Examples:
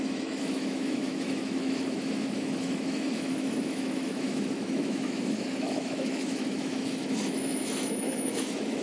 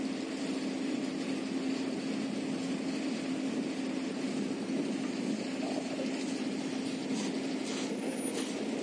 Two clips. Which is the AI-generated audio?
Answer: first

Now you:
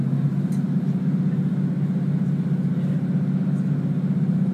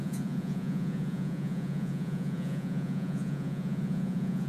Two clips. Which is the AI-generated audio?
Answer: second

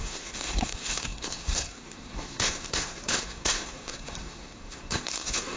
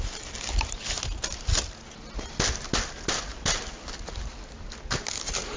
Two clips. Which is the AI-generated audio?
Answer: first